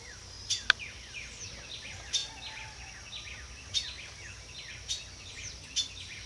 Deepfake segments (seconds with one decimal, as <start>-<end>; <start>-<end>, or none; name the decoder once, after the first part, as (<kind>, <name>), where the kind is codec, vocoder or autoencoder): none